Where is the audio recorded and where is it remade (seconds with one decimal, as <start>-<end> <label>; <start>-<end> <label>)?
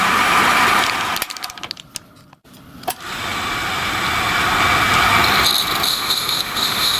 0.0-5.9 recorded; 5.9-7.0 remade